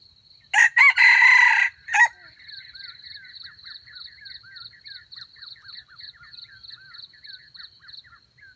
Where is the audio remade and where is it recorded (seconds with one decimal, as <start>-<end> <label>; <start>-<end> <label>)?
0.0-8.6 recorded

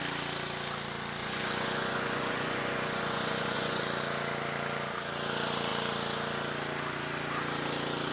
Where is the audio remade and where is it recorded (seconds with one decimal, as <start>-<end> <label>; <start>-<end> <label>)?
0.0-1.2 recorded; 1.2-3.8 remade; 3.8-8.1 recorded

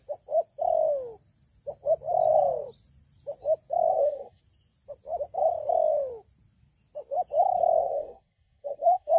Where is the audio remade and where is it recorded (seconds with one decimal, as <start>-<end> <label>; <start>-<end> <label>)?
0.0-3.9 recorded; 3.9-4.4 remade; 4.4-7.8 recorded; 7.8-9.2 remade

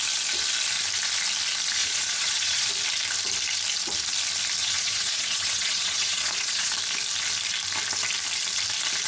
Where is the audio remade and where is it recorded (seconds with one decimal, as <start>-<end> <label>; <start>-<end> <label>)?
0.0-1.8 recorded; 1.8-2.7 remade; 2.7-4.6 recorded; 4.6-6.7 remade; 6.7-9.1 recorded

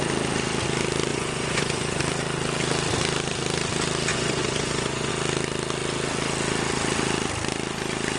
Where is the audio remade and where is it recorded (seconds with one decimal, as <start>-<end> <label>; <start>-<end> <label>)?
0.0-1.1 recorded; 1.1-2.0 remade; 2.0-4.1 recorded; 4.1-5.1 remade; 5.1-8.2 recorded

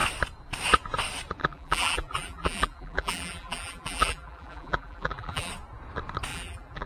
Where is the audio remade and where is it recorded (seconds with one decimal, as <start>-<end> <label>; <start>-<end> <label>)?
0.0-1.4 recorded; 1.4-5.5 remade; 5.5-6.3 recorded; 6.3-6.9 remade